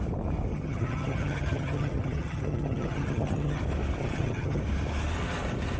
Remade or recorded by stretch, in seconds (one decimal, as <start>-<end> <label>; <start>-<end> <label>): 0.0-0.5 recorded; 0.5-3.6 remade; 3.6-4.0 recorded; 4.0-4.6 remade; 4.6-5.8 recorded